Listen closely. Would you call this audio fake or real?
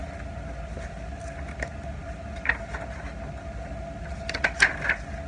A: real